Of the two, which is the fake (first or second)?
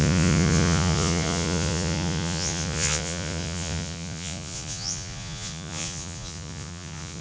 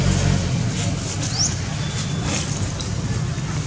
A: first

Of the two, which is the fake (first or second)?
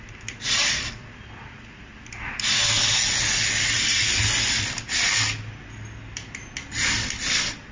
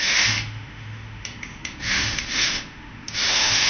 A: second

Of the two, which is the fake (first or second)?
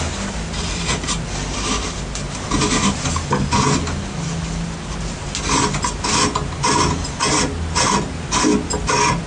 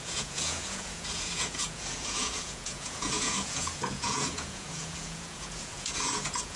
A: second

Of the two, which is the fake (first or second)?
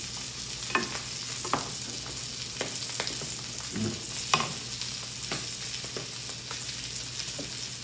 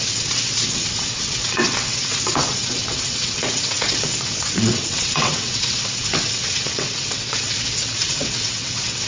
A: second